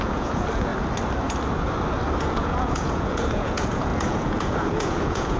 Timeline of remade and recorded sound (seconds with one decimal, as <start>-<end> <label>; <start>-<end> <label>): 0.0-0.7 remade; 0.7-2.2 recorded; 2.2-5.4 remade